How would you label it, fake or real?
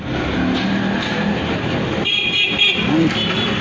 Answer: real